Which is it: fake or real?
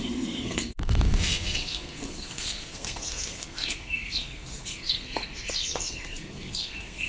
fake